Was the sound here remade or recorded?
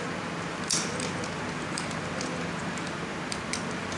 recorded